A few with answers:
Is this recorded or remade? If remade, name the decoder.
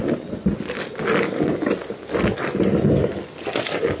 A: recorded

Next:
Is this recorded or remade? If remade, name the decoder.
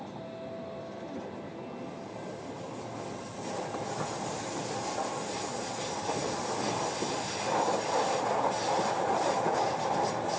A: recorded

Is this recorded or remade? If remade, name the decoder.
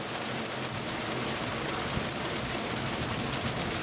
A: recorded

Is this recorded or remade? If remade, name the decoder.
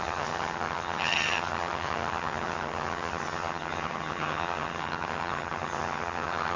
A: remade, vocoder, HiFi-GAN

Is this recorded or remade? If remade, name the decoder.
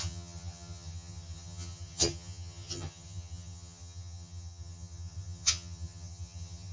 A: remade, vocoder, HiFi-GAN